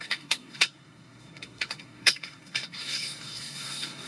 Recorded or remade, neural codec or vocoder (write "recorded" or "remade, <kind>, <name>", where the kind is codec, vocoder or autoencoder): remade, codec, SNAC